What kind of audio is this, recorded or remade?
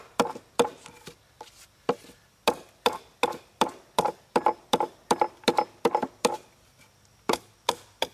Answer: recorded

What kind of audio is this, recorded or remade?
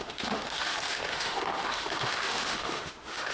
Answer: remade